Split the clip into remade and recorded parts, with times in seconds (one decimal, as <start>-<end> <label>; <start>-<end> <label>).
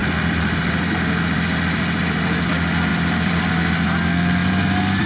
0.0-2.5 remade; 2.5-2.9 recorded; 2.9-3.5 remade; 3.5-4.4 recorded; 4.4-5.1 remade